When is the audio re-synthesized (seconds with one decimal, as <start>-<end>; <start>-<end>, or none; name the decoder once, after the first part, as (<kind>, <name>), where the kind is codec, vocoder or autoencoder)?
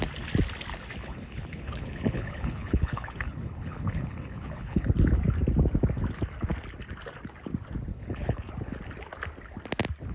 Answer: 1.0-4.9 (codec, HILCodec); 7.9-8.5